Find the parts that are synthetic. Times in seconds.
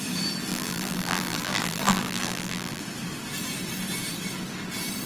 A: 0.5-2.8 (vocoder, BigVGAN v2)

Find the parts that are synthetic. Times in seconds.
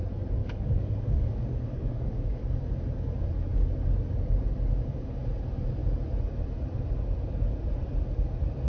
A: 0.4-2.4 (codec, DAC)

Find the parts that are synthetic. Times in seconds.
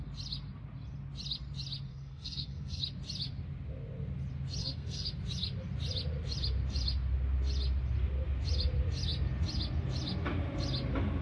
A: 1.9-2.8 (codec, SNAC); 4.6-5.1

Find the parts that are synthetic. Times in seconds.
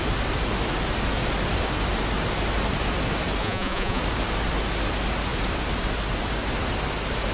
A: 3.4-4.0 (vocoder, Vocos)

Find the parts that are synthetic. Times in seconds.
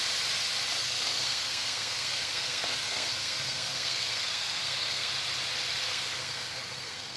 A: 0.8-5.1 (codec, SNAC); 5.9-7.2